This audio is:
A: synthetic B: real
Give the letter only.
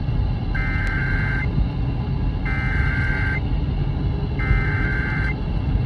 B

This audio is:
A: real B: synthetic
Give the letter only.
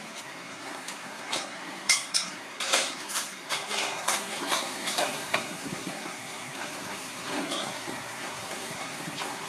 B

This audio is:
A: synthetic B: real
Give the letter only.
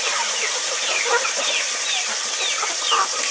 A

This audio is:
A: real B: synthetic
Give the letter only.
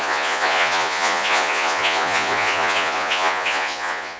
B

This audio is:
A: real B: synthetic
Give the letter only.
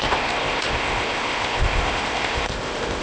B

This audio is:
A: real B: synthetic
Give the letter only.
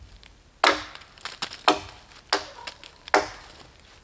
A